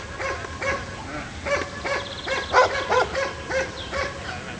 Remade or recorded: recorded